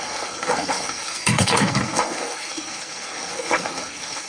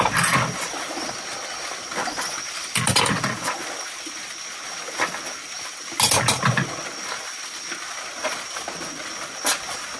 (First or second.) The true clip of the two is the second